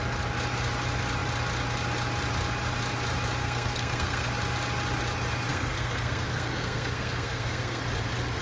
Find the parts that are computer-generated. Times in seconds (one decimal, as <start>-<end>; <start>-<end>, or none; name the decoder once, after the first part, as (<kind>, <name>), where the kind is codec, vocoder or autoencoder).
3.4-4.3 (codec, SNAC); 5.5-7.8